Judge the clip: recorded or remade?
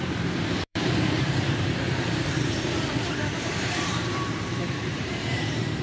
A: remade